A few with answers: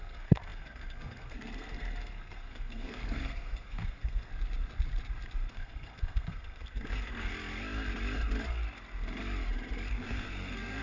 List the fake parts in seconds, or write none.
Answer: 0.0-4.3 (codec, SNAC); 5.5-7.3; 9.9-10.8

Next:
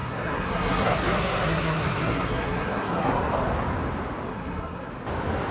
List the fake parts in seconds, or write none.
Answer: 0.0-3.3 (codec, SNAC); 4.3-4.9

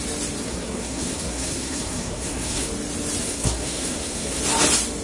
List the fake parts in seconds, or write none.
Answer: 0.4-2.7 (codec, SNAC); 3.2-4.4

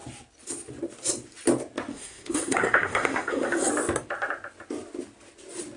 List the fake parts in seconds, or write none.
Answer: 1.9-3.7 (codec, SNAC)